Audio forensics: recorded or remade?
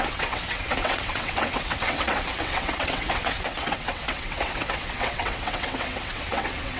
remade